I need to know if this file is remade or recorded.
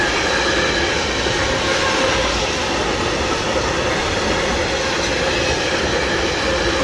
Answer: recorded